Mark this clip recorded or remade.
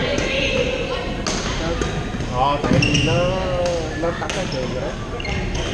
recorded